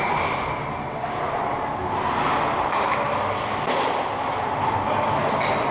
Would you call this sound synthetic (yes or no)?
no